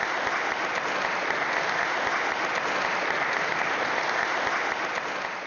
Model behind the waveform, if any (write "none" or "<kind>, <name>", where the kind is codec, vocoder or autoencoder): none